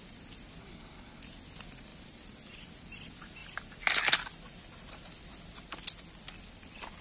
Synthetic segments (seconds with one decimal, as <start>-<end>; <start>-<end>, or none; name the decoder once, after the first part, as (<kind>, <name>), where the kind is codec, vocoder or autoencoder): 0.6-1.2 (codec, HILCodec)